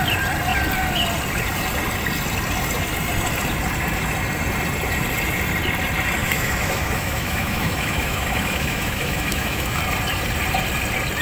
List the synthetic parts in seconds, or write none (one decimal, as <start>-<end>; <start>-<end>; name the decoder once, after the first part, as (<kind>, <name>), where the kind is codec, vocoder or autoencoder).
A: 6.2-9.8 (autoencoder, DAC-VAE)